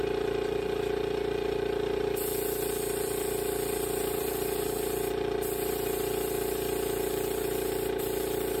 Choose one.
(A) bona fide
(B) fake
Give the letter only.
B